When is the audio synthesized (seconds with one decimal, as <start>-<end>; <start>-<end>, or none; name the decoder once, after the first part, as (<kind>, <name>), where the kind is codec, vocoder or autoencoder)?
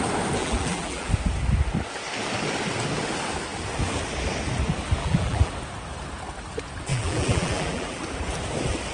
0.4-1.1 (vocoder, BigVGAN v2); 5.0-5.5; 6.9-8.0